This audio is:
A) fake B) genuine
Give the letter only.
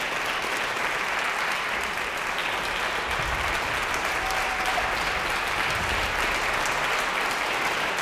B